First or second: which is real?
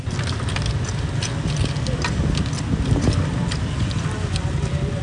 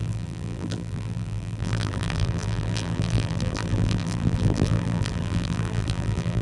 first